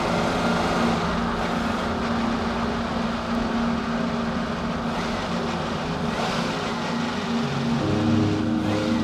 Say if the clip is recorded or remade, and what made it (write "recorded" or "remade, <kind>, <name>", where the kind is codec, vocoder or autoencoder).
recorded